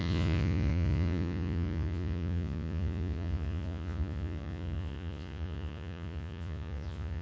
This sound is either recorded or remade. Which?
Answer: remade